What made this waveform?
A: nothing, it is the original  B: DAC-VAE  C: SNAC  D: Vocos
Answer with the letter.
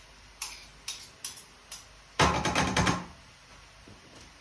A